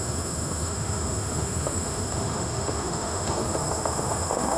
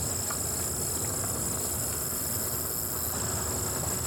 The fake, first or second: first